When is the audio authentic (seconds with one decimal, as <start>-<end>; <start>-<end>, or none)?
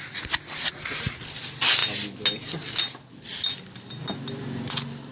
0.0-0.6; 1.2-5.1